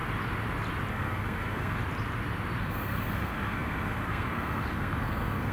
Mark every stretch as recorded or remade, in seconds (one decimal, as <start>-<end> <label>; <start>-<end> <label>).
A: 0.0-0.9 recorded; 0.9-1.8 remade; 1.8-2.6 recorded; 2.6-5.5 remade